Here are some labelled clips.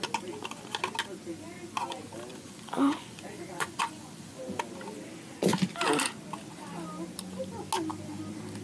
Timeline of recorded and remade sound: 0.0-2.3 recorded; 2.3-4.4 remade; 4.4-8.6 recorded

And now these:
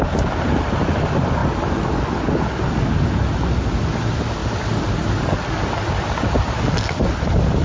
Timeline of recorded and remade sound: 0.0-7.6 recorded

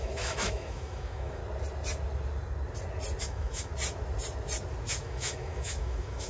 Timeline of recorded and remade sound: 0.0-1.4 remade; 1.4-3.2 recorded; 3.2-3.7 remade; 3.7-4.9 recorded; 4.9-6.3 remade

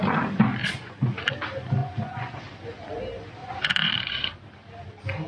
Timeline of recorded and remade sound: 0.0-0.6 recorded; 0.6-1.2 remade; 1.2-1.8 recorded; 1.8-2.4 remade; 2.4-3.4 recorded; 3.4-4.3 remade; 4.3-5.3 recorded

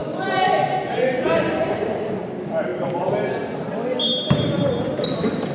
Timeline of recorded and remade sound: 0.0-5.5 recorded

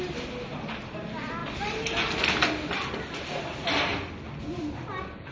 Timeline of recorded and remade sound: 0.0-5.3 recorded